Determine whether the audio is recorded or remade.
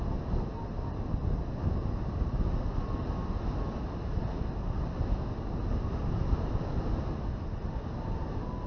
recorded